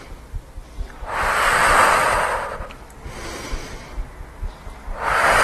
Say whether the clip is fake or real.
real